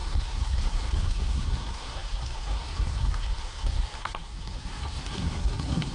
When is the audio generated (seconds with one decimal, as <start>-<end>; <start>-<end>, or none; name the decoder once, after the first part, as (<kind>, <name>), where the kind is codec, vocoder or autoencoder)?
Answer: 0.0-5.9 (codec, SNAC)